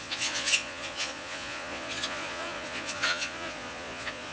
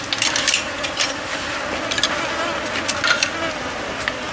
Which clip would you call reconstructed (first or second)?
first